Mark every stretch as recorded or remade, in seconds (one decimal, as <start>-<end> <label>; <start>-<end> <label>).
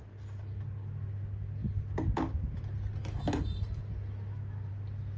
0.0-5.2 recorded